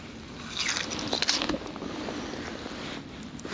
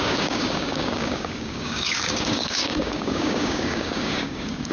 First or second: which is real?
first